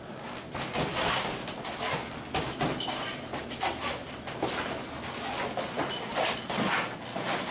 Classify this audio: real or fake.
real